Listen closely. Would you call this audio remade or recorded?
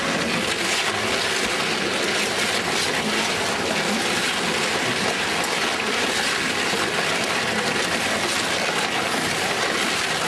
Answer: recorded